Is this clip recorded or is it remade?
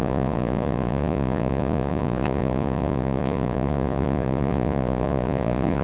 remade